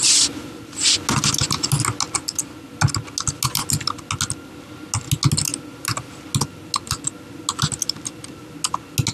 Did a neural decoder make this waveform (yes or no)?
no